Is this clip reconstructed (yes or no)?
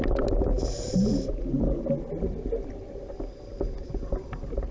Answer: no